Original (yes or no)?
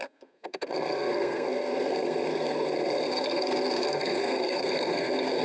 no